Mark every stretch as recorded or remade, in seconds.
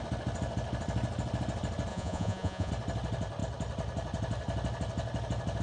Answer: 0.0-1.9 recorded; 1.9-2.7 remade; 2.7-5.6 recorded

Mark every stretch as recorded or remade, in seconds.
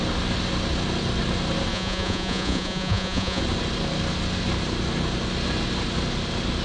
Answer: 0.0-1.7 recorded; 1.7-3.4 remade; 3.4-6.6 recorded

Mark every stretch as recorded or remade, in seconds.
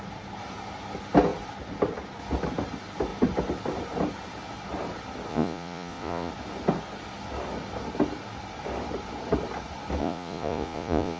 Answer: 0.0-5.3 recorded; 5.3-6.3 remade; 6.3-10.0 recorded; 10.0-11.2 remade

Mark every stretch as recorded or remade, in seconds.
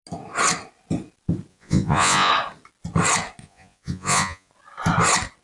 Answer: 0.0-1.5 recorded; 1.5-2.3 remade; 2.3-3.4 recorded; 3.4-4.5 remade; 4.5-5.4 recorded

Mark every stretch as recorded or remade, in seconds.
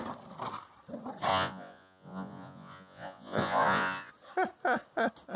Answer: 0.0-1.3 recorded; 1.3-4.1 remade; 4.1-5.4 recorded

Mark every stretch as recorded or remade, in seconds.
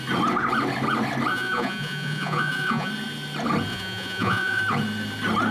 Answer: 0.0-1.3 recorded; 1.3-2.9 remade; 2.9-3.7 recorded; 3.7-4.6 remade; 4.6-5.5 recorded